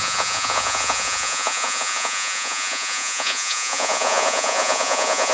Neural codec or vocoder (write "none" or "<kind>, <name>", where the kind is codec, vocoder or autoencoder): vocoder, Vocos